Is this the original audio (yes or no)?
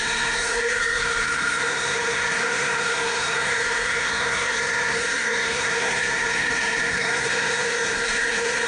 no